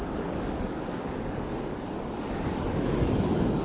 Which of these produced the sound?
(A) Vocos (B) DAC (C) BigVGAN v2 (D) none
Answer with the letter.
B